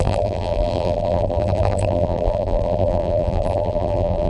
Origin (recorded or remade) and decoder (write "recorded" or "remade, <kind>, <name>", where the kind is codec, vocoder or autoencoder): remade, vocoder, BigVGAN v2